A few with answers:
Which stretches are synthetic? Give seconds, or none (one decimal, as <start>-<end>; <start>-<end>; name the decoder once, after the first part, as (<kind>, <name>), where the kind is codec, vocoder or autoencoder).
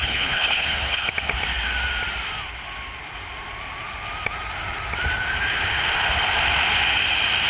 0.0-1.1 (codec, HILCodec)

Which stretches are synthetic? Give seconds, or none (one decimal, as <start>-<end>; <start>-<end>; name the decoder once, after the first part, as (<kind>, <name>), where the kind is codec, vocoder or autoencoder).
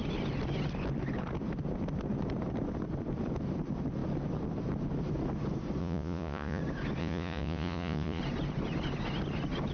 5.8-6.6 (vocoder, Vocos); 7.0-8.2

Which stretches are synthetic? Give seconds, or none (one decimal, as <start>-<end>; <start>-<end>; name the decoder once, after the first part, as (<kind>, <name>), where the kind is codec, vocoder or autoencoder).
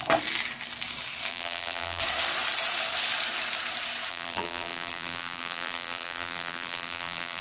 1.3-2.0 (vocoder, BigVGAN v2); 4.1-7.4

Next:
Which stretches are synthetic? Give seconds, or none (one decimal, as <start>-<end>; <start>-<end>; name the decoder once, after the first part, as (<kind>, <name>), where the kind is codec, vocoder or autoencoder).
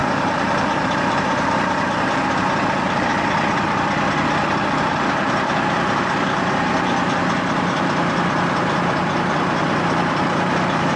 0.0-3.1 (vocoder, BigVGAN v2); 4.8-11.0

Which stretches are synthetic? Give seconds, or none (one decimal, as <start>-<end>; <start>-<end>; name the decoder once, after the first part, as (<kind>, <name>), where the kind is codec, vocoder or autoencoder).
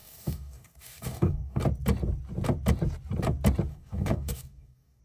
0.0-1.6 (codec, DAC); 3.7-5.0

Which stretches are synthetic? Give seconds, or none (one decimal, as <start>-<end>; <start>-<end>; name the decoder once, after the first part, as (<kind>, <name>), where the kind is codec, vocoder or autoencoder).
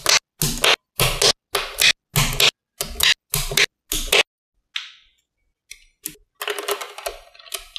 none